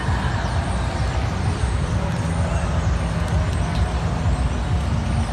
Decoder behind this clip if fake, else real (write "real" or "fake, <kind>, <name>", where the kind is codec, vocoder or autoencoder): real